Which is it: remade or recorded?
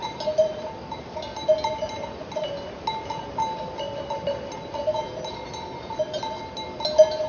recorded